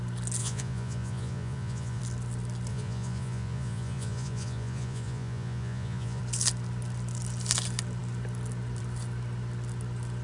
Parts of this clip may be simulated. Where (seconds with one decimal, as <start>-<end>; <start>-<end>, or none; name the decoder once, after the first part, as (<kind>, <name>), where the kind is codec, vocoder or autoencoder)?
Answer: 0.4-2.0 (vocoder, Vocos); 2.7-6.2

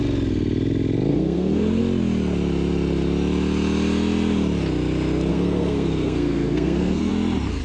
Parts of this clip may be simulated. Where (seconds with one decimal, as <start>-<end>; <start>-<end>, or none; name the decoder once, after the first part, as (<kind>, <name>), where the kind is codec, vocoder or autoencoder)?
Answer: 1.1-1.8 (codec, SNAC); 5.3-7.1

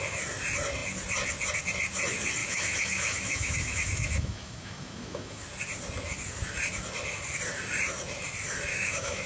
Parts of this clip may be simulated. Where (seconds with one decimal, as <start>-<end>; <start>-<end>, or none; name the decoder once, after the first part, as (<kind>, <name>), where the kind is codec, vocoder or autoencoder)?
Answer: 2.4-5.4 (autoencoder, DAC-VAE); 8.7-9.3

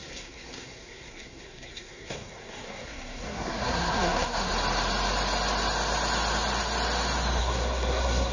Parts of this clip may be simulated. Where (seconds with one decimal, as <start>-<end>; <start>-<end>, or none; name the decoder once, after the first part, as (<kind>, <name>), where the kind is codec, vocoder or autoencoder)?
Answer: 0.0-4.5 (codec, SNAC); 7.4-8.3

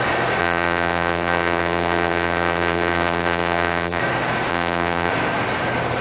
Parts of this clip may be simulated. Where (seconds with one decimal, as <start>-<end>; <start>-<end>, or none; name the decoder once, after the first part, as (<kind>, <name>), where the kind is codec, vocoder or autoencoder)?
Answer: 0.4-4.0 (vocoder, BigVGAN v2); 4.5-5.1

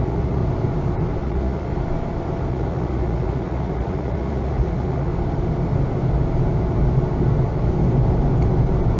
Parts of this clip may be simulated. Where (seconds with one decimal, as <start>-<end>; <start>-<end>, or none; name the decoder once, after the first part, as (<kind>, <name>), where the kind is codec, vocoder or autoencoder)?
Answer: 0.0-0.4 (vocoder, Vocos); 1.2-1.7; 2.5-5.1

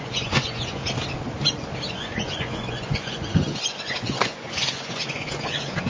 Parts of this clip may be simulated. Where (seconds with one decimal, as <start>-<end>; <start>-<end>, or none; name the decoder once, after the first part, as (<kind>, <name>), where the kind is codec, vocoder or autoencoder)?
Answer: 0.0-0.8 (vocoder, Vocos); 1.9-5.9